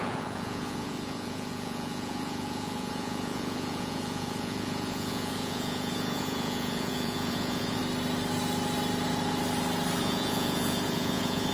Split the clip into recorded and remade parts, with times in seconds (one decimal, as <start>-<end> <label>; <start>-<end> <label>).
0.0-7.8 remade; 7.8-10.0 recorded; 10.0-11.5 remade